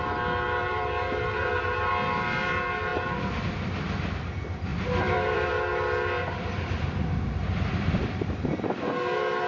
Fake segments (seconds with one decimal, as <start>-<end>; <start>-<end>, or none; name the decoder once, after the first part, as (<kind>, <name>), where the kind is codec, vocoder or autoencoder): 0.6-1.6 (vocoder, BigVGAN v2); 4.7-5.5